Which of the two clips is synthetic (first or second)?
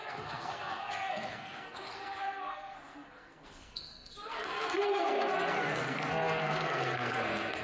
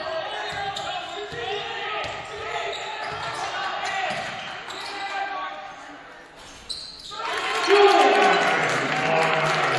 first